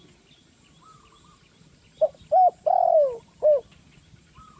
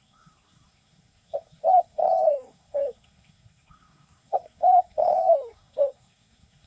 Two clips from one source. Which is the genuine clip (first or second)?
first